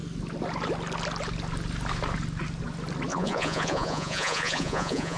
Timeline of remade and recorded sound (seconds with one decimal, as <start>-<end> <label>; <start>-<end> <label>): 0.0-3.1 recorded; 3.1-5.2 remade